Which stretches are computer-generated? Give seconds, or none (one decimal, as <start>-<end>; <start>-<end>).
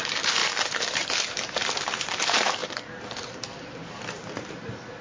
0.0-2.6; 3.3-5.0